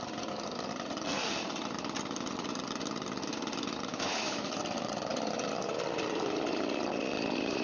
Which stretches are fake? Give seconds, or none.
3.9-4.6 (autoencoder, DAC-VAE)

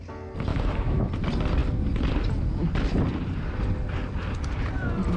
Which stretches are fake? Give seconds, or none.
0.5-1.1 (autoencoder, DAC-VAE)

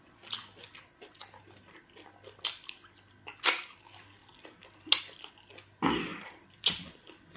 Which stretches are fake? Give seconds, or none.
6.1-7.4 (vocoder, BigVGAN v2)

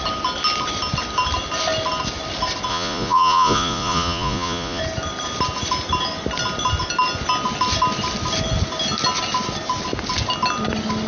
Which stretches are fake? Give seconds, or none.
2.7-4.8 (vocoder, Vocos)

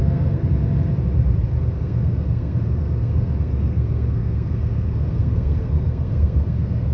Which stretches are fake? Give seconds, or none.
0.0-0.4 (codec, SNAC); 1.8-6.9